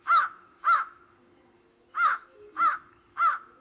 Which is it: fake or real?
fake